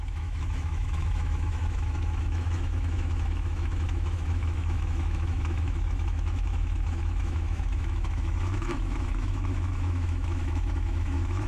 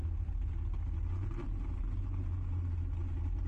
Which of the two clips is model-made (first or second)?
first